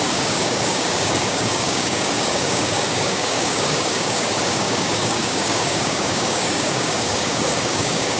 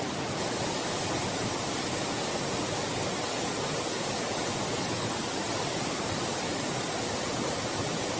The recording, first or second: second